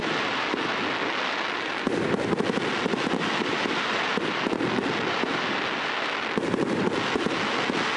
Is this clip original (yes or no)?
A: yes